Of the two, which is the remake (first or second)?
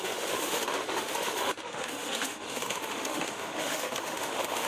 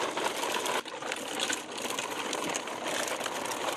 first